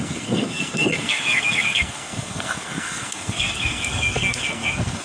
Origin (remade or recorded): remade